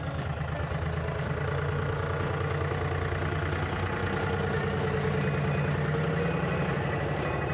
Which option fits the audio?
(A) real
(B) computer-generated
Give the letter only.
A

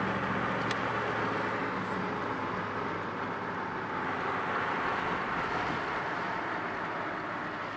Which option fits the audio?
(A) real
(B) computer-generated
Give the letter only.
A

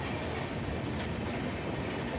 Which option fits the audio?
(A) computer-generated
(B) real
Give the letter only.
B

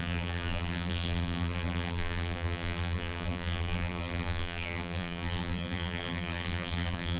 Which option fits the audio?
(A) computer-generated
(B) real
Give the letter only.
A